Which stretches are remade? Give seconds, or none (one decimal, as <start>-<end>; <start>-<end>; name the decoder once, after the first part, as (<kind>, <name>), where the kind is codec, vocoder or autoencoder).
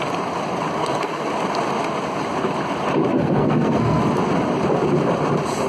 0.8-1.3 (codec, SNAC); 3.1-4.0